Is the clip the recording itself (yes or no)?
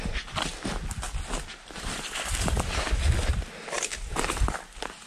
yes